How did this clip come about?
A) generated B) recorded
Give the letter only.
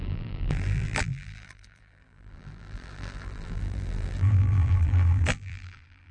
A